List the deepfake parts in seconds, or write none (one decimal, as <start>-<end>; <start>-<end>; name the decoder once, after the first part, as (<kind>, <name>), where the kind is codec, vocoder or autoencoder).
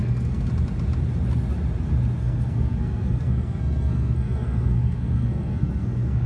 0.0-0.5 (codec, SNAC); 2.2-6.3